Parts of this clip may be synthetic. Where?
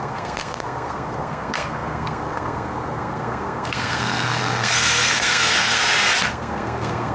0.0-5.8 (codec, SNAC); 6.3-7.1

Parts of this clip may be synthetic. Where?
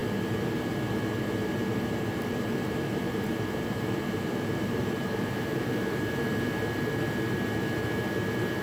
1.7-6.1 (vocoder, BigVGAN v2)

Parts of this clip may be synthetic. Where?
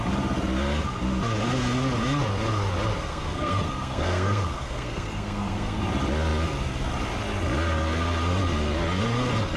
3.1-5.8 (codec, SNAC)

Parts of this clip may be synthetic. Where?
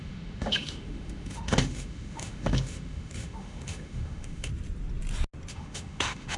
0.0-4.5 (autoencoder, DAC-VAE); 5.5-6.4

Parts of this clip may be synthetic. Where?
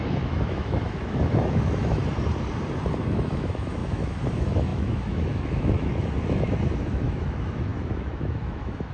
0.0-2.0 (autoencoder, DAC-VAE); 3.0-8.9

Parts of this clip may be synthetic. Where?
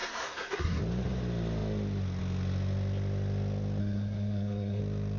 0.0-0.8 (codec, SNAC); 3.8-4.8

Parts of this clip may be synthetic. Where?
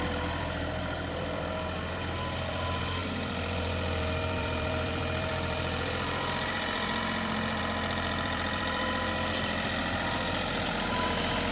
0.0-9.8 (vocoder, BigVGAN v2); 10.7-11.5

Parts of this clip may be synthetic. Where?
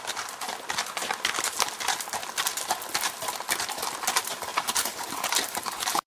4.5-6.1 (vocoder, BigVGAN v2)